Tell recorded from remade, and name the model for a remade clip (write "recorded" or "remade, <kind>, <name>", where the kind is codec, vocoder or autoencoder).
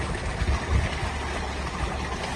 recorded